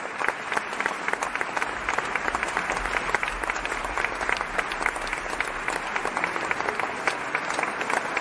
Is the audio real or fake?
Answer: real